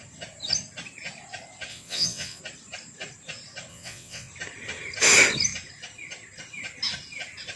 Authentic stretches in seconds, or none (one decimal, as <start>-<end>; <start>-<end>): 0.0-1.7; 2.4-3.7; 4.3-7.6